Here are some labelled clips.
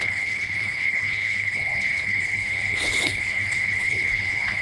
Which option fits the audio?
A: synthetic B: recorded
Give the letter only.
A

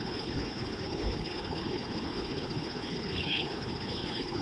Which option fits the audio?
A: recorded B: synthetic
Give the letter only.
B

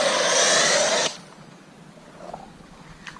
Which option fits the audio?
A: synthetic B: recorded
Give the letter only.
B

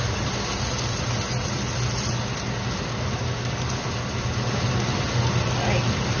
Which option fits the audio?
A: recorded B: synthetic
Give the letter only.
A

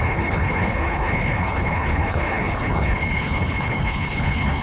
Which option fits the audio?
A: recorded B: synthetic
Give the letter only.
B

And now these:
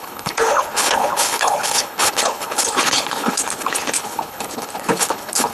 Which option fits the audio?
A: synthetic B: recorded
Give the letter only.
A